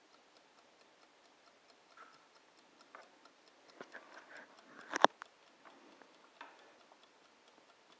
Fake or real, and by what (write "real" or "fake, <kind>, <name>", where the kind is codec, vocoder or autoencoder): real